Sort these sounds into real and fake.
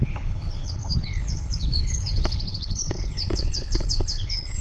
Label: fake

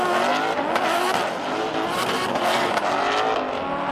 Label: real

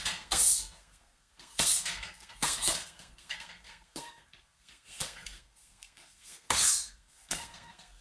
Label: fake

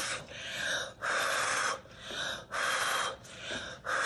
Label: fake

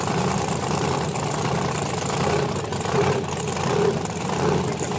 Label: real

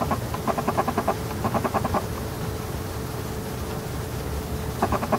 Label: real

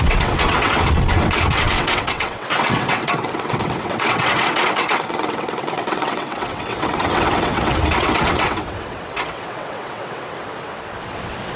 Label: fake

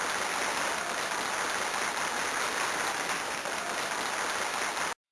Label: real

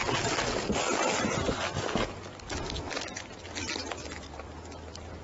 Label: real